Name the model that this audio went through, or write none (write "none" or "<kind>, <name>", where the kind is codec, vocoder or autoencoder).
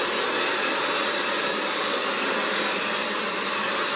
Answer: none